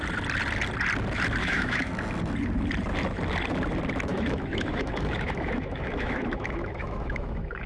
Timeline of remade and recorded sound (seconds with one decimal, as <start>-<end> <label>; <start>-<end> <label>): 0.0-1.4 recorded; 1.4-1.9 remade; 1.9-4.1 recorded; 4.1-7.7 remade